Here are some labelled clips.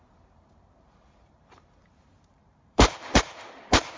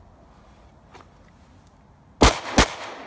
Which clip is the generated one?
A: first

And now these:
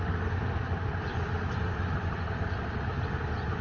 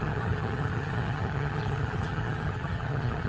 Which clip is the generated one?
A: second